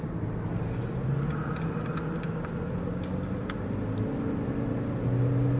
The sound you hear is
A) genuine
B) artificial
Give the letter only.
A